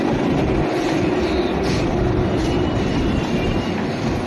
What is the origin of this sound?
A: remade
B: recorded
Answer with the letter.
B